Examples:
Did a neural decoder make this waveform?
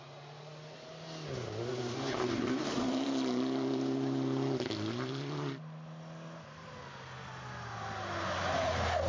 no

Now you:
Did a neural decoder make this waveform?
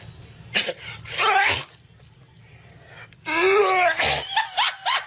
no